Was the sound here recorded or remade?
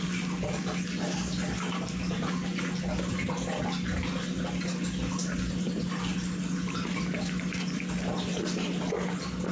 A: recorded